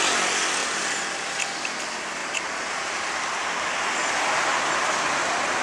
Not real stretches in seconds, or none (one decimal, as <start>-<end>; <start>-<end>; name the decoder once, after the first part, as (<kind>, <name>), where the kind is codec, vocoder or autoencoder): 0.6-1.8 (vocoder, BigVGAN v2); 2.2-3.1